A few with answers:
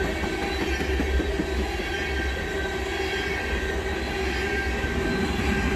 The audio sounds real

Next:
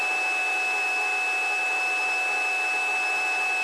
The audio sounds real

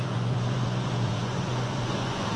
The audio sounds fake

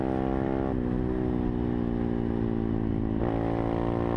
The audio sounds real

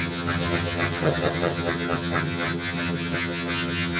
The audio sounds fake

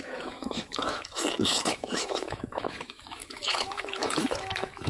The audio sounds fake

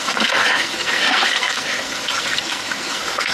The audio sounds fake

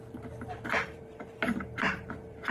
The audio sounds fake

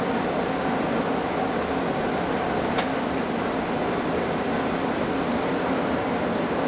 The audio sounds real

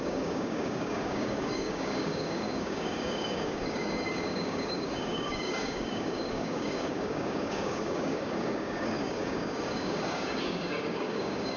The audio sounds fake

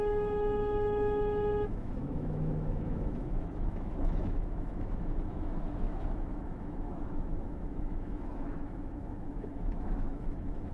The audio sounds fake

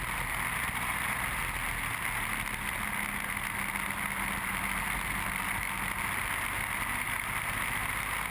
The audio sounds real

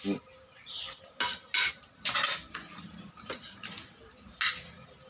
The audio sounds real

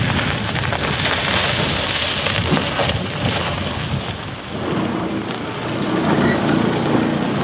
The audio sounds real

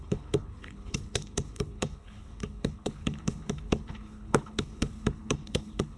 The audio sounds fake